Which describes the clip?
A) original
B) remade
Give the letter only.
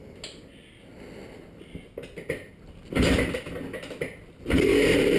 A